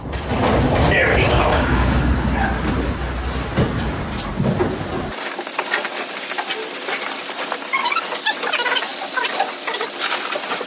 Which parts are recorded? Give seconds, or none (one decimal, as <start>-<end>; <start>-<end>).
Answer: 0.0-1.1; 2.1-10.7

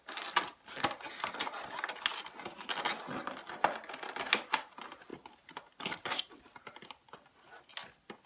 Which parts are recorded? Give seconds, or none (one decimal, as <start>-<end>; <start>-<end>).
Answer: 0.0-8.3

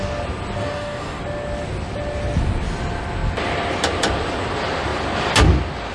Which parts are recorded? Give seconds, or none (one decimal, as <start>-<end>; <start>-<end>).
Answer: 0.0-0.6; 1.2-5.9

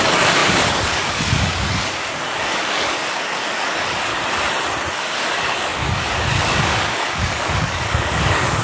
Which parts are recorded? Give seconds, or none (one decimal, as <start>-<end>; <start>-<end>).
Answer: 4.1-4.9

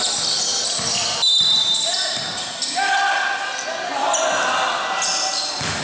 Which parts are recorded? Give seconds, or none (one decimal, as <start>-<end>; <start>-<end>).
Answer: 0.0-5.8

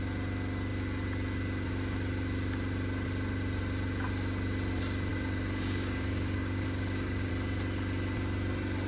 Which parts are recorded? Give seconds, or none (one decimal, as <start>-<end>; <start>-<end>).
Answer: 0.0-5.1; 7.3-8.9

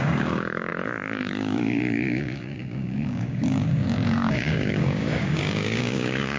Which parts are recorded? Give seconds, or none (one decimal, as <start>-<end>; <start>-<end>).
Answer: none

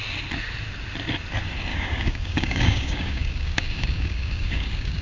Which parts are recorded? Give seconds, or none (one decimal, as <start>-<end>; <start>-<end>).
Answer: 0.0-1.7